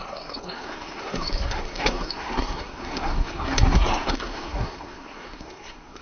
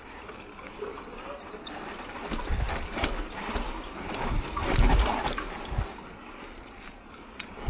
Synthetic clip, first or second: first